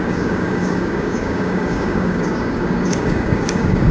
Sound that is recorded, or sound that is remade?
remade